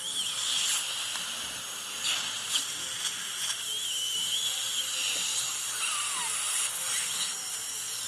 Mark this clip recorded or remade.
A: recorded